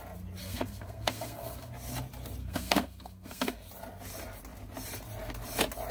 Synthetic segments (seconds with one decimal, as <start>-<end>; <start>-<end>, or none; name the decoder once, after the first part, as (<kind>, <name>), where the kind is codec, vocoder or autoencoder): 0.4-1.7 (codec, SNAC); 2.4-3.7